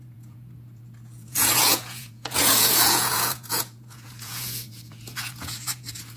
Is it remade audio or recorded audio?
remade